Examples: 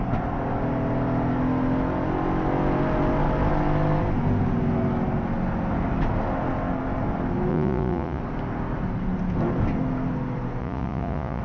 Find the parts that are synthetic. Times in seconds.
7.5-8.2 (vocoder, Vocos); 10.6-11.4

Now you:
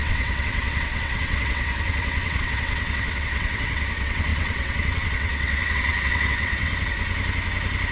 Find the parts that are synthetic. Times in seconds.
0.0-6.7 (vocoder, WaveNeXt)

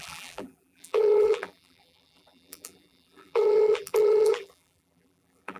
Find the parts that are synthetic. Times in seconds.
0.0-5.6 (vocoder, BigVGAN v2)